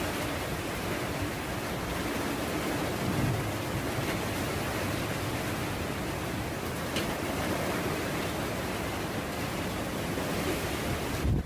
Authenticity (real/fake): real